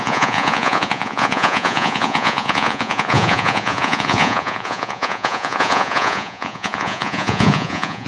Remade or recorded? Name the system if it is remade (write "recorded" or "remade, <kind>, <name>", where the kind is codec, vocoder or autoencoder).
remade, vocoder, Vocos